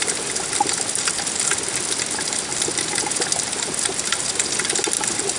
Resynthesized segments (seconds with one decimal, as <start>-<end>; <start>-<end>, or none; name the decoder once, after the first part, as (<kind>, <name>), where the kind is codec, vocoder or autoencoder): none